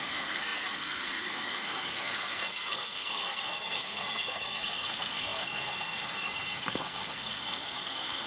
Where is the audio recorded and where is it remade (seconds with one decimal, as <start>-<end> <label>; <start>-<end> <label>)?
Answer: 0.0-8.3 remade